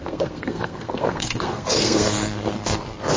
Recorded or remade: remade